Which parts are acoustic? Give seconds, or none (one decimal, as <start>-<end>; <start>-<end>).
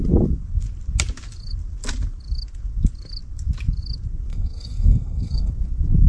0.0-4.3; 5.5-6.1